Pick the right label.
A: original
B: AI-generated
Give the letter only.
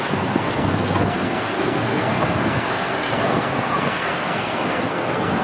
B